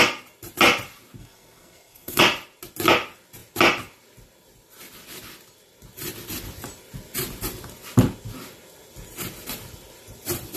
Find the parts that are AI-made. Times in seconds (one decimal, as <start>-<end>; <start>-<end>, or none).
1.2-2.2

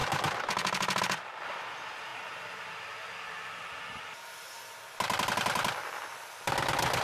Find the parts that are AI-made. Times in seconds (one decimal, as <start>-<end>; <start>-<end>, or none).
0.0-2.1; 4.1-7.0

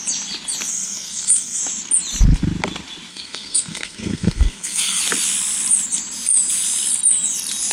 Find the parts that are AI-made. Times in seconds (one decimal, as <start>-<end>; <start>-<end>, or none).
0.7-1.6; 3.1-5.0